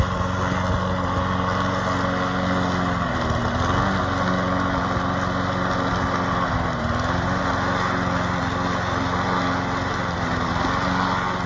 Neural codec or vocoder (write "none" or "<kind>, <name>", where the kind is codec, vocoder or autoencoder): none